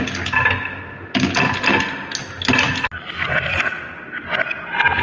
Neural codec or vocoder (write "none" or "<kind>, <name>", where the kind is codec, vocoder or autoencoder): none